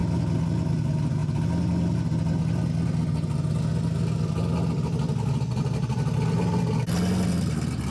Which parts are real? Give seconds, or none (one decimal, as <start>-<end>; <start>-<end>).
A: 0.0-7.9

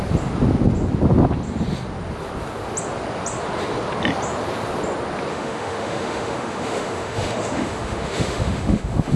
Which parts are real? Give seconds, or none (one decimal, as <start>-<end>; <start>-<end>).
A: 0.0-5.3

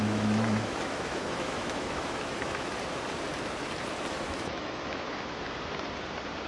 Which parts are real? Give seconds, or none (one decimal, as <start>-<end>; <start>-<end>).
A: 2.7-4.1; 5.1-6.5

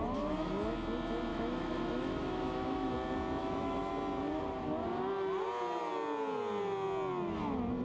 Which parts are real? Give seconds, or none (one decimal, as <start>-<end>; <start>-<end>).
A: 0.0-1.3; 2.9-3.4; 3.9-7.8

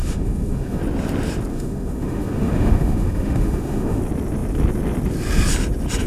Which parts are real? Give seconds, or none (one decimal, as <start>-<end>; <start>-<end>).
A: 0.8-1.5; 4.0-6.1

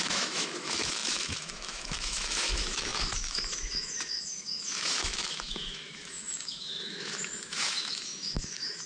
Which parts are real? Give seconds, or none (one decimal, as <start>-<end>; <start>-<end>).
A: none

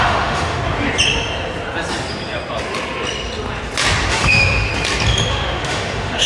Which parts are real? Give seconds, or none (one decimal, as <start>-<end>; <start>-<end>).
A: 0.6-4.1; 4.7-5.3

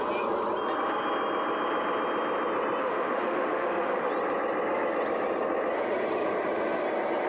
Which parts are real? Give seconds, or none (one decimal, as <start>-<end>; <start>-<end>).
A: 0.0-2.8; 4.1-7.3